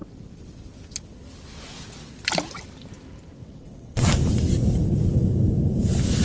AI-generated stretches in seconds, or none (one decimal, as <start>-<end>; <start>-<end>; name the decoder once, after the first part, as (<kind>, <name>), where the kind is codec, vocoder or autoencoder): 3.4-4.1 (vocoder, WaveNeXt)